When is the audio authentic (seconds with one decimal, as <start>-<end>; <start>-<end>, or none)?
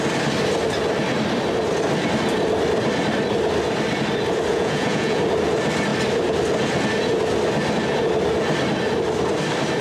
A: 0.0-4.5; 5.2-9.8